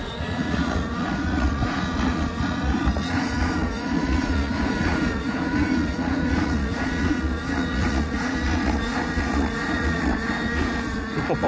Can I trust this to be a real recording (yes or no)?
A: no